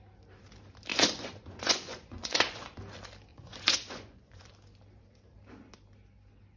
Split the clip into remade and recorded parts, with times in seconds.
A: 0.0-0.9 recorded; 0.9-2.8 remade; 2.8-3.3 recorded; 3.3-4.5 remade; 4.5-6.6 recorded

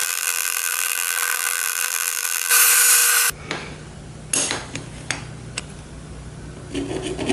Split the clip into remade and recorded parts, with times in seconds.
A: 0.0-2.5 remade; 2.5-7.3 recorded

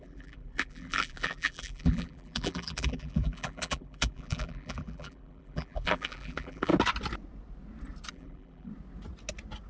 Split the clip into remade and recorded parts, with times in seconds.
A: 0.0-6.7 remade; 6.7-8.1 recorded; 8.1-8.7 remade; 8.7-9.7 recorded

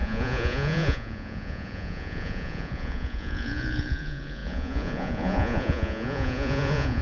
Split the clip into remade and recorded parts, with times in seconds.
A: 0.0-7.0 remade